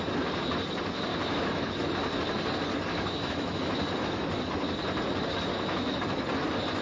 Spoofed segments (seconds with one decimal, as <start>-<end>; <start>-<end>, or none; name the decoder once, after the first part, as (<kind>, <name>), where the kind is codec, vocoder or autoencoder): 1.1-1.9 (autoencoder, DAC-VAE); 2.9-3.8; 5.5-6.0